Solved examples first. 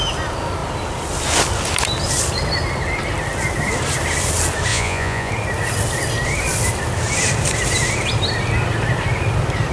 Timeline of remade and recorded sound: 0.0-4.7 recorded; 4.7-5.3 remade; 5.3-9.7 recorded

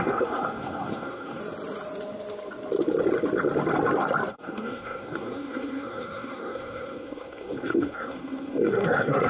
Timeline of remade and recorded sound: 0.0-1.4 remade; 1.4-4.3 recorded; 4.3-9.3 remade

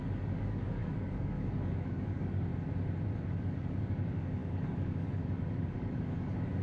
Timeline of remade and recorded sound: 0.0-2.5 remade; 2.5-3.3 recorded; 3.3-6.6 remade